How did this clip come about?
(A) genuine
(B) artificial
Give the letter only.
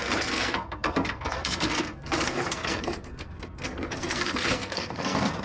B